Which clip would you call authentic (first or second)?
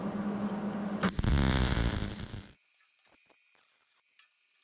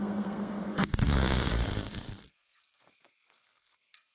first